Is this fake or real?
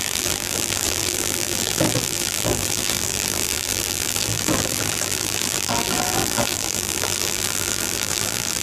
fake